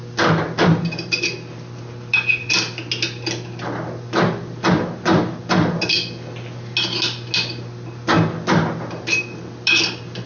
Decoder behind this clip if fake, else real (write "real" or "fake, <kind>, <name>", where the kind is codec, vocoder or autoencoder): real